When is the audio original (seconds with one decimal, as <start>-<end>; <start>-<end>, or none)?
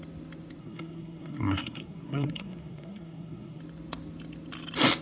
0.0-0.6; 3.6-5.0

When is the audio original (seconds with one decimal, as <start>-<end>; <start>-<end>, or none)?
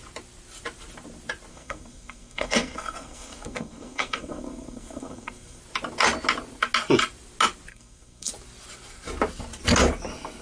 0.0-1.5; 5.6-7.7; 8.3-10.4